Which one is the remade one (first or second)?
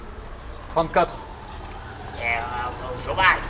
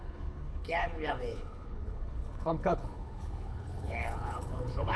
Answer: second